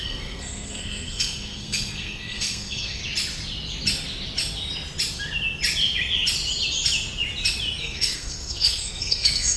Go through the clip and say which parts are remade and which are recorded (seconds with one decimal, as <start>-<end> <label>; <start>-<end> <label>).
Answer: 0.0-3.0 remade; 3.0-7.8 recorded; 7.8-9.6 remade